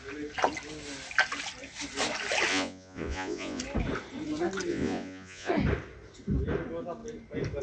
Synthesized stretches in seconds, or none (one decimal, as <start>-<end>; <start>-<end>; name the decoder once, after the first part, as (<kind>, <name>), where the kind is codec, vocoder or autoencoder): 2.5-3.6 (vocoder, Vocos); 4.7-5.5